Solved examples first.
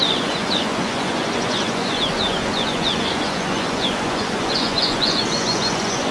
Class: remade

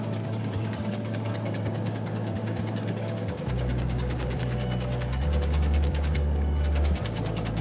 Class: remade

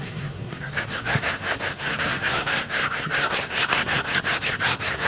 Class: remade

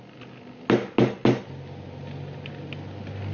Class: recorded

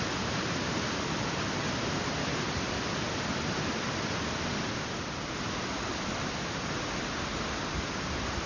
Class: recorded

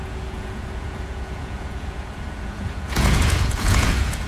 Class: remade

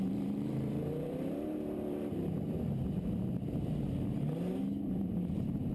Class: remade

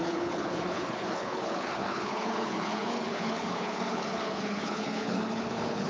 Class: remade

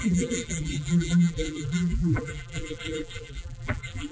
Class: remade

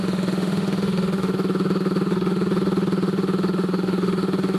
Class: remade